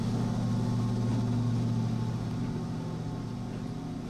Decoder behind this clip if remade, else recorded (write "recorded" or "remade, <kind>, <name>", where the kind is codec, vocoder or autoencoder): recorded